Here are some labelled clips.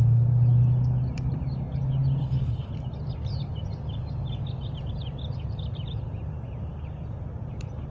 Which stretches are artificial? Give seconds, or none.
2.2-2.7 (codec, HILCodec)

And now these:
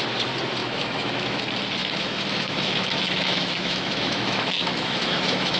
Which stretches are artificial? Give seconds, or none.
0.6-1.4 (autoencoder, DAC-VAE); 1.8-5.6

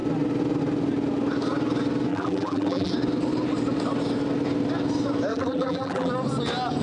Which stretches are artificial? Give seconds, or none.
2.1-2.9 (vocoder, BigVGAN v2); 5.3-6.1

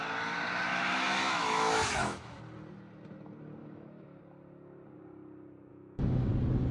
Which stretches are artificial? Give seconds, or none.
0.7-2.4 (autoencoder, DAC-VAE); 3.6-4.2; 5.7-6.3

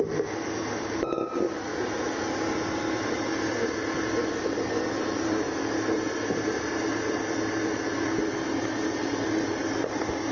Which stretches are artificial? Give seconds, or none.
none

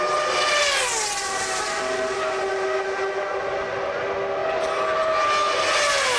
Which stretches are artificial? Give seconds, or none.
none

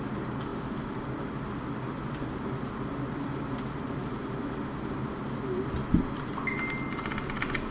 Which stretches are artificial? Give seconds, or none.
none

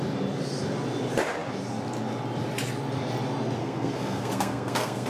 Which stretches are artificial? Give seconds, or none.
3.6-5.1 (codec, SNAC)